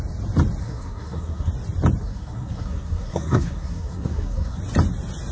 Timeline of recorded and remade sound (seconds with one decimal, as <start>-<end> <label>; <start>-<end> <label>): 0.0-0.6 recorded; 0.6-1.5 remade; 1.5-2.0 recorded; 2.0-4.6 remade; 4.6-5.3 recorded